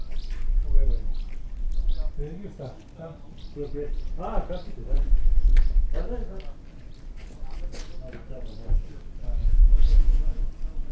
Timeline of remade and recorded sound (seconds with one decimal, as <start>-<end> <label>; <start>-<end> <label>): 0.0-9.4 recorded; 9.4-10.5 remade; 10.5-10.9 recorded